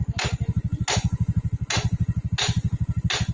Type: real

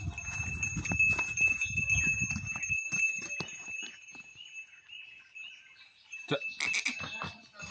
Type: real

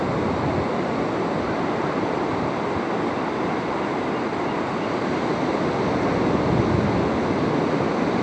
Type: real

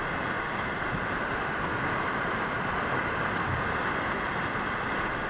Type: real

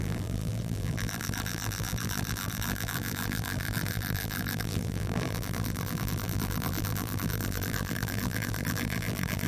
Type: fake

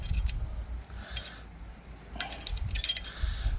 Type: real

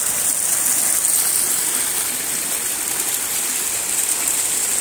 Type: real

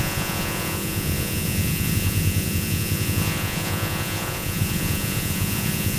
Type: fake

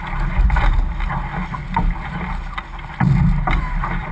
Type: real